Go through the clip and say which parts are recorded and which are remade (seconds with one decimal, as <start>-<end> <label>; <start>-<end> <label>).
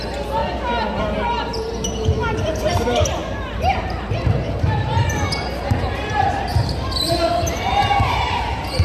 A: 0.0-0.4 remade; 0.4-1.0 recorded; 1.0-8.8 remade